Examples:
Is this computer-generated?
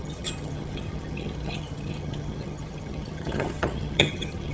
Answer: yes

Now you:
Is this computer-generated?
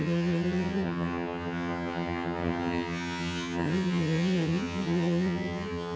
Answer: yes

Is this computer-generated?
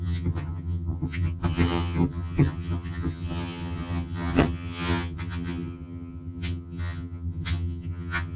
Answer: yes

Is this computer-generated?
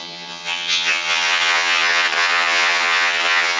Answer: yes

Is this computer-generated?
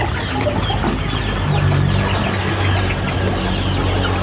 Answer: no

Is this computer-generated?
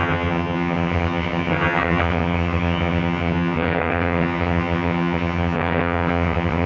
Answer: yes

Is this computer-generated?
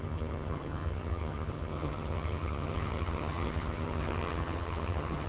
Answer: yes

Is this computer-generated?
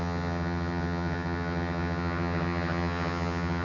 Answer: yes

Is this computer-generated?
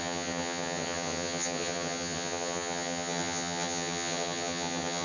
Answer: yes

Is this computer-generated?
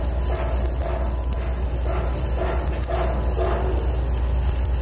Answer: no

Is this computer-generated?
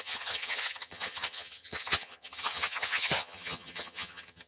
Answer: yes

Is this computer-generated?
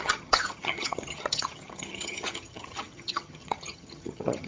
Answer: yes